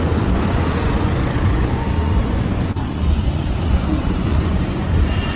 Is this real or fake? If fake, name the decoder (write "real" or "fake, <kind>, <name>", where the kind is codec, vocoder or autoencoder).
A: fake, vocoder, Vocos